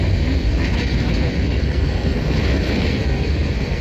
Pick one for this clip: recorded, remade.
remade